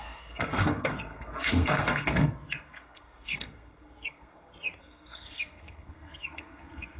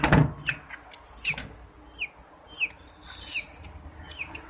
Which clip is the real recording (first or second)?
second